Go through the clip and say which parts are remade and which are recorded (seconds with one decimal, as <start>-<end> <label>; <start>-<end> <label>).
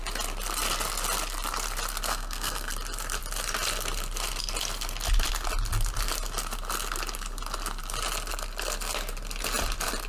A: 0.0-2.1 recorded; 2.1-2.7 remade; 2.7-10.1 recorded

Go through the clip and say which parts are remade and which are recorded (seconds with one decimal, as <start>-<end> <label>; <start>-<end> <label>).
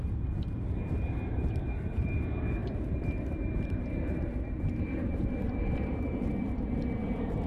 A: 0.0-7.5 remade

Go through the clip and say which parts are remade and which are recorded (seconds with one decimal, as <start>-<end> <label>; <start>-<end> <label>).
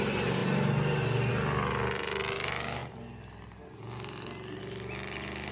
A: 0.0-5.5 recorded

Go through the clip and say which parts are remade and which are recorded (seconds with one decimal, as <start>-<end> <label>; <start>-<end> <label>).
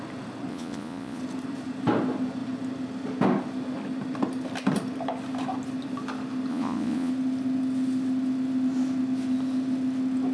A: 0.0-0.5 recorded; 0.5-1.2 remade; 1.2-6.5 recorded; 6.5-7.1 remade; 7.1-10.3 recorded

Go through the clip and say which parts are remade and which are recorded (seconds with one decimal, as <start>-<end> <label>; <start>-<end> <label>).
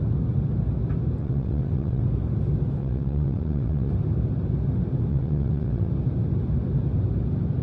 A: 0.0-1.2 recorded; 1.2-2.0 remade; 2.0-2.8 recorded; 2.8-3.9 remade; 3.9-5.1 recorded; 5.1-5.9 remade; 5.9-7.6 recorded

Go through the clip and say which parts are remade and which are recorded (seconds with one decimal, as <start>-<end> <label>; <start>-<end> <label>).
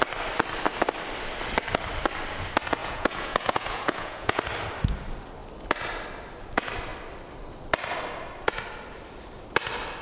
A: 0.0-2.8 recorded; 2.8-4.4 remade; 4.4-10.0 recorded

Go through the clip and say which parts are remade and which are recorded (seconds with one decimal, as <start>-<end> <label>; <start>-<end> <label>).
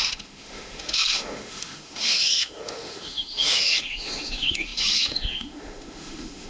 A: 0.0-6.5 remade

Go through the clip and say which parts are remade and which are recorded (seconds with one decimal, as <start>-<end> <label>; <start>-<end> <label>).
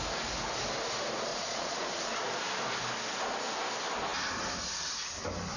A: 0.0-1.3 recorded; 1.3-2.0 remade; 2.0-5.6 recorded